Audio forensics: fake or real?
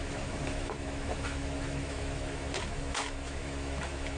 fake